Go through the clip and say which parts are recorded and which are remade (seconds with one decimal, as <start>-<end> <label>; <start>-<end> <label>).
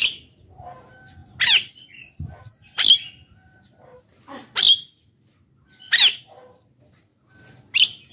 0.0-8.1 recorded